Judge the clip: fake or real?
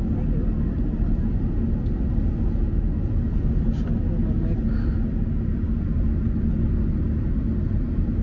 real